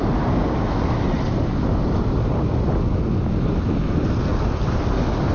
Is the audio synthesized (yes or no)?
no